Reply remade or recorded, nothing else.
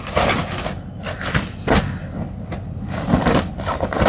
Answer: recorded